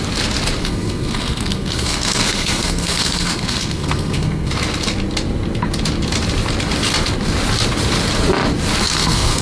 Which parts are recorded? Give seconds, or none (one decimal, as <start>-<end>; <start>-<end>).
0.0-0.6; 4.5-8.8

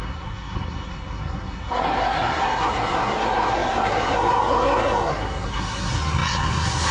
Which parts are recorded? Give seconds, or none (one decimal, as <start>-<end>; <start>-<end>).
none